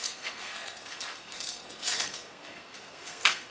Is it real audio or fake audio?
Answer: fake